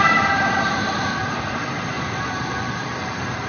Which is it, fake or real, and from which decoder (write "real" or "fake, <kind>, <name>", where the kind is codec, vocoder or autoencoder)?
fake, vocoder, BigVGAN v2